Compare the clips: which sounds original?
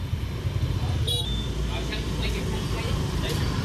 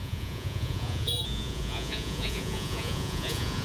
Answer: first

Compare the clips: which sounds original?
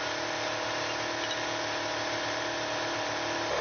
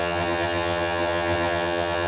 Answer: first